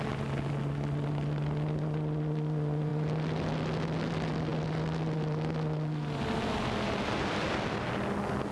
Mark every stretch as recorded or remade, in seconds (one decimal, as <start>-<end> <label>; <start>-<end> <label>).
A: 0.0-8.5 recorded